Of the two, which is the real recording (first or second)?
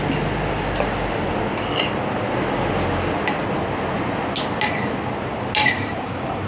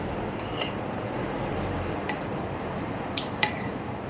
first